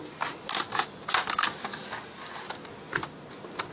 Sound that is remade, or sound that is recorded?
recorded